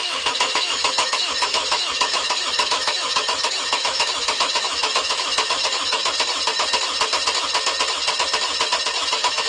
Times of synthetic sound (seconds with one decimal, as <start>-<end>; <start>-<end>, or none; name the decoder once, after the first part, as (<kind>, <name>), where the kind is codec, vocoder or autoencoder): 0.0-6.0 (autoencoder, DAC-VAE); 9.1-9.5